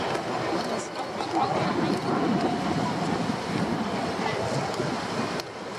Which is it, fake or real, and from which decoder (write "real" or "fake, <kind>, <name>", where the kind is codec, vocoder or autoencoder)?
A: real